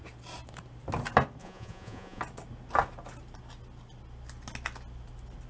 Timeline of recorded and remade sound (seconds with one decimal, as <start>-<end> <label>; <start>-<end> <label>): 0.0-1.4 recorded; 1.4-2.2 remade; 2.2-5.5 recorded